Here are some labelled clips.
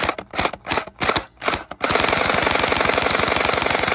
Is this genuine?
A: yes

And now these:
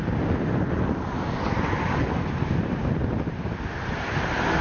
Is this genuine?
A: yes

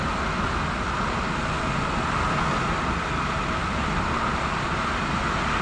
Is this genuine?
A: yes